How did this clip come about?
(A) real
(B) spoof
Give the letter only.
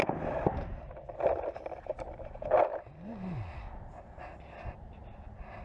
A